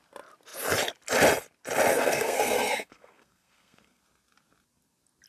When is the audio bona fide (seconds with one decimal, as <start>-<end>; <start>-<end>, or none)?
0.0-1.9; 4.0-5.3